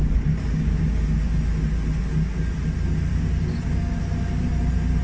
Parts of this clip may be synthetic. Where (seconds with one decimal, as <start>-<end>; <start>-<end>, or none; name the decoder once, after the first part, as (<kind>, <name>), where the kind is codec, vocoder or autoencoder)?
0.0-0.8 (codec, DAC); 3.1-4.0